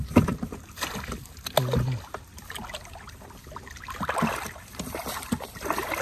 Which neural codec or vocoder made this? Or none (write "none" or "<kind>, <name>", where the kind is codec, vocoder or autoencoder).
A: none